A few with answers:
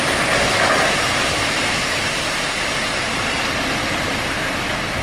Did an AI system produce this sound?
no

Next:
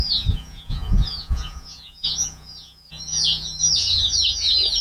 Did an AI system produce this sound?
yes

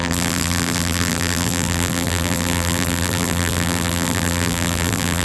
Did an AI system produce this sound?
yes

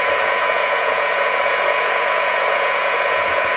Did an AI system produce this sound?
yes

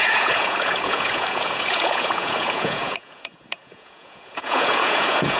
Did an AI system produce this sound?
yes